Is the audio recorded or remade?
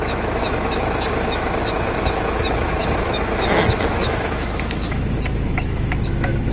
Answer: remade